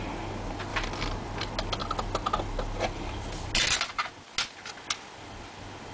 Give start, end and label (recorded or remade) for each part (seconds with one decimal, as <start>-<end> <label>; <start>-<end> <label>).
0.0-5.9 recorded